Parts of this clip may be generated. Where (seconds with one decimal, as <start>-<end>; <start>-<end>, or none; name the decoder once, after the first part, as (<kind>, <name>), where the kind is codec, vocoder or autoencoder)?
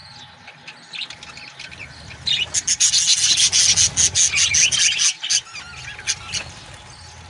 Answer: none